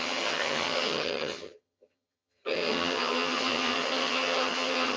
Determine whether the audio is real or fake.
fake